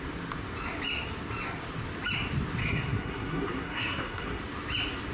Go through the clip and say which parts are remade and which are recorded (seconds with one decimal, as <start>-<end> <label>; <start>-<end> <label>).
0.0-2.6 recorded; 2.6-4.4 remade; 4.4-5.1 recorded